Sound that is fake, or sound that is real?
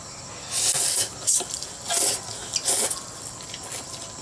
real